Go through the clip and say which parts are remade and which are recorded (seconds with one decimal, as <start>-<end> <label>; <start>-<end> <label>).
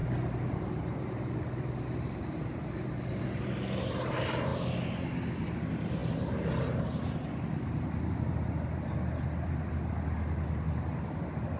0.0-11.6 recorded